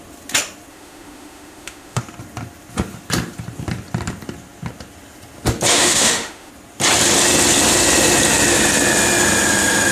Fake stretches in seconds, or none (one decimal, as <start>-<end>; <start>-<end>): 0.7-2.0; 5.7-6.5